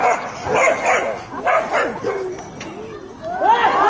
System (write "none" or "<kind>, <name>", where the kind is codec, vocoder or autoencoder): none